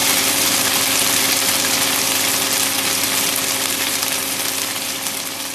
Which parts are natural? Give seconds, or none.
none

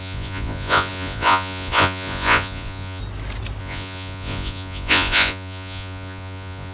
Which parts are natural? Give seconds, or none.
3.0-3.6

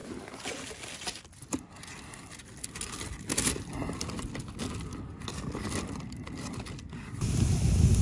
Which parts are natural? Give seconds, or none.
0.0-8.0

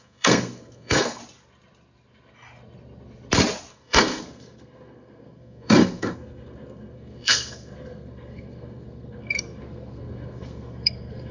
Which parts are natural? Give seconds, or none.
1.2-3.7

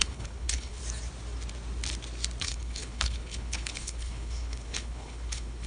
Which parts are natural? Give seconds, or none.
0.8-2.4

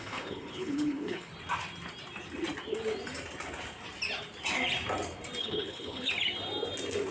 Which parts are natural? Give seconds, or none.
1.3-5.4; 6.1-7.1

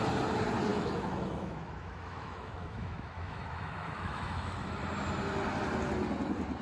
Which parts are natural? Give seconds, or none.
0.0-0.7; 4.7-6.6

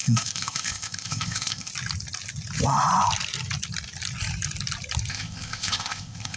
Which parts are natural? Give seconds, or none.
1.7-5.1